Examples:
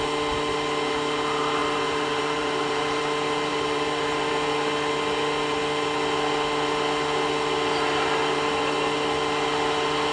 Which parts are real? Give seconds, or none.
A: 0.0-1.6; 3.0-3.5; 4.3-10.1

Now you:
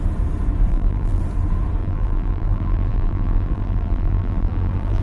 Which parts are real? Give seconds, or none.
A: 0.0-0.7; 1.2-1.8

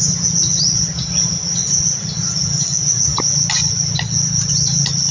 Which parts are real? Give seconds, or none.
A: 0.0-5.1

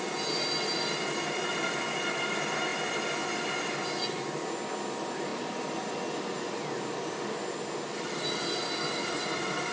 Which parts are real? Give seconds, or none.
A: 0.0-5.3; 5.9-9.7

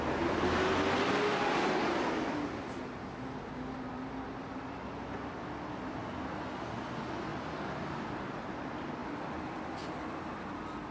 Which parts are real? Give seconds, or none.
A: 0.0-10.9

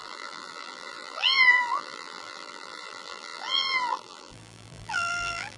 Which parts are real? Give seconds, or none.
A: none